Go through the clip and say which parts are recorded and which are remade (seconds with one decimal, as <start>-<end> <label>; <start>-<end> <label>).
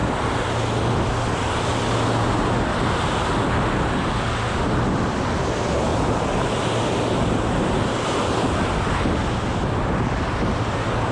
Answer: 0.0-11.1 recorded